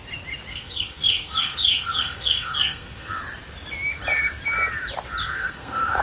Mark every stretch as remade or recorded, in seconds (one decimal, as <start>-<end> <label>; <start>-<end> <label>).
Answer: 0.0-0.5 recorded; 0.5-3.2 remade; 3.2-5.2 recorded; 5.2-6.0 remade